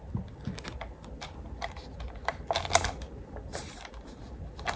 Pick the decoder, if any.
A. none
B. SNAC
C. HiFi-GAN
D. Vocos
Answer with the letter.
A